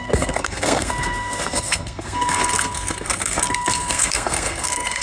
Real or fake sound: fake